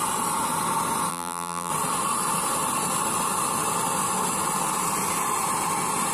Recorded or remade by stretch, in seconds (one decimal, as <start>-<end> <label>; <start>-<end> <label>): 0.0-1.1 recorded; 1.1-1.7 remade; 1.7-6.1 recorded